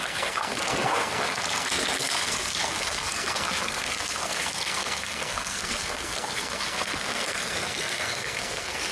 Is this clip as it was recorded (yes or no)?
no